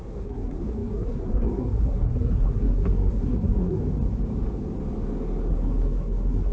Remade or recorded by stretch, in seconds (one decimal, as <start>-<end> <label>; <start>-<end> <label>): 0.0-3.8 remade; 3.8-5.5 recorded; 5.5-6.5 remade